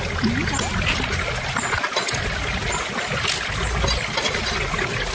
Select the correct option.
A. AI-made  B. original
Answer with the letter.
B